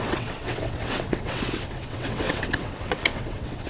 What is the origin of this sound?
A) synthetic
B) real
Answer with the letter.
A